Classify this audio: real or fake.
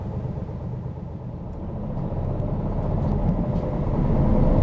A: real